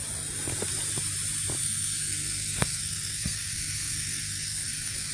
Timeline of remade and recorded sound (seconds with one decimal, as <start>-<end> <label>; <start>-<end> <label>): 0.0-1.6 recorded; 1.6-5.1 remade